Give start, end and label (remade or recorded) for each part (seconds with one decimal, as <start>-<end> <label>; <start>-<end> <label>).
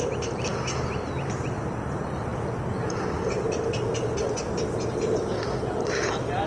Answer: 0.0-6.5 recorded